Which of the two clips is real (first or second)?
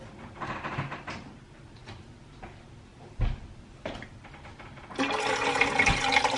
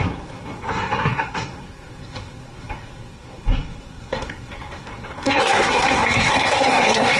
first